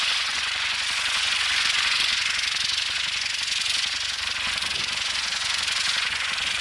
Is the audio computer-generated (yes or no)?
yes